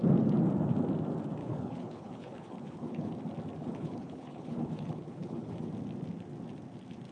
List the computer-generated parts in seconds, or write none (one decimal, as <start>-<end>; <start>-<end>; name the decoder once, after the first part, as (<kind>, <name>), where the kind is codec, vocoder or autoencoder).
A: 1.4-3.1 (codec, HILCodec); 3.6-5.7

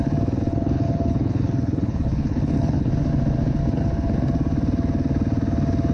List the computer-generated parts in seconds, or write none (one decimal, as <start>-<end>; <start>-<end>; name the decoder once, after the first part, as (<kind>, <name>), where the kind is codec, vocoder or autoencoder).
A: 0.5-2.9 (codec, HILCodec)

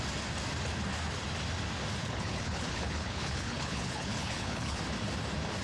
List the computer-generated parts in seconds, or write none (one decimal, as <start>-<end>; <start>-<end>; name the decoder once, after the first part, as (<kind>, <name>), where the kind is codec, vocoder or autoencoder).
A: 2.0-4.8 (codec, HILCodec)

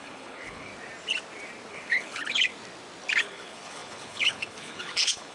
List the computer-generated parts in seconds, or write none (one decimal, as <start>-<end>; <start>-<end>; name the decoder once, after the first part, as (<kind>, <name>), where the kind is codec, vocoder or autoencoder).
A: 0.0-0.7 (codec, HILCodec); 1.7-2.5; 3.2-5.3

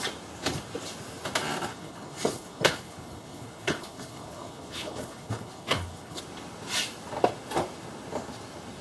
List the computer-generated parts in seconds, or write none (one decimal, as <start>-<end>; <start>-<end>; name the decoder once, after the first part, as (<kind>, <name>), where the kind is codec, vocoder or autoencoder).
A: 1.7-6.2 (codec, HILCodec)

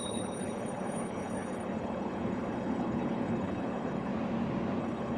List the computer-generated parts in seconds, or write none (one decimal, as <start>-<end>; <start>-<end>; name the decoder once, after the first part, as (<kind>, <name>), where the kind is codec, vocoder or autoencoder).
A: 0.0-4.1 (codec, HILCodec); 4.8-5.2

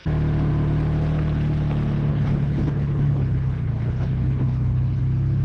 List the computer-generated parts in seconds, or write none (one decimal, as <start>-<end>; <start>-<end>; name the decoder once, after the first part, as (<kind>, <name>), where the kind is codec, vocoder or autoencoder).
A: 2.1-5.0 (codec, HILCodec)

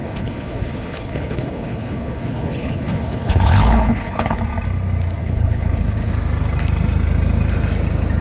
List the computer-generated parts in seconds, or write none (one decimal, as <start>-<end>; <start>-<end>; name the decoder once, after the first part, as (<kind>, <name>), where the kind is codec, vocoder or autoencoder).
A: 0.0-4.4 (codec, HILCodec); 5.2-6.1